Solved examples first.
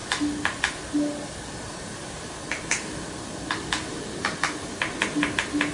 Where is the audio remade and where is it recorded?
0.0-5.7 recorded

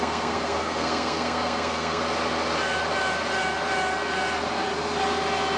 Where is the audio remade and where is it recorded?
0.0-2.0 remade; 2.0-5.6 recorded